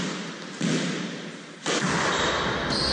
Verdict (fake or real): real